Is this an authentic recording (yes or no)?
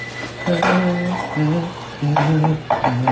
yes